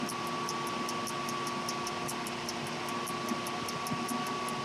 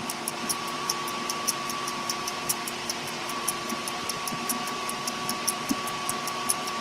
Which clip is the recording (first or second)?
first